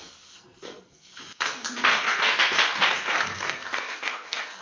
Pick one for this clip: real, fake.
fake